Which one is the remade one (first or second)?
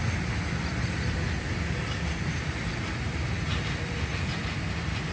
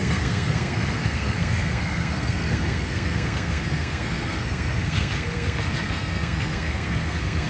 second